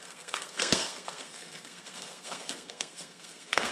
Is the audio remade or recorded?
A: remade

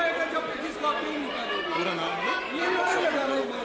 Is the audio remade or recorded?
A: recorded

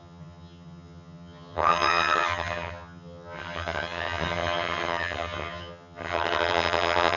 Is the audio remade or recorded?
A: remade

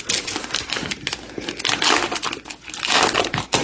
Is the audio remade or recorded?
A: recorded